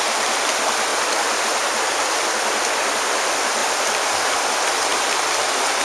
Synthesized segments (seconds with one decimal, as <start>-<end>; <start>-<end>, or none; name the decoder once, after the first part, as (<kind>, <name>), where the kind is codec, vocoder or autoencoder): 3.6-4.2 (vocoder, BigVGAN v2); 4.9-5.8